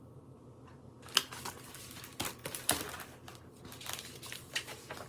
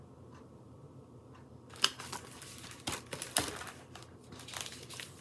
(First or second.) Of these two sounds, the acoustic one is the first